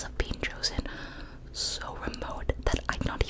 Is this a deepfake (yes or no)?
no